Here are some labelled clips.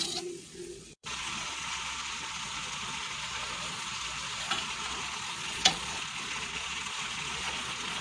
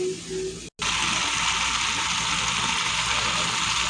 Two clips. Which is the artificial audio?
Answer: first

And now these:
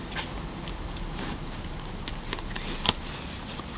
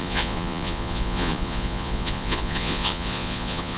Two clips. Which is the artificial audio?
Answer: second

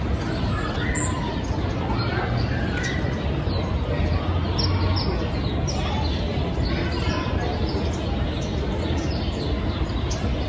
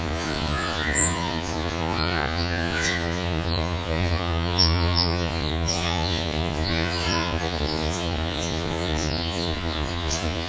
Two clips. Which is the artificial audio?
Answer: second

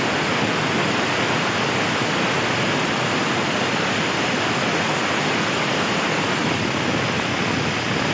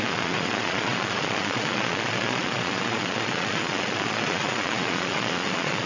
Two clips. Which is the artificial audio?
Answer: second